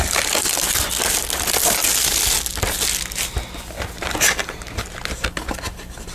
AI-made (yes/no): no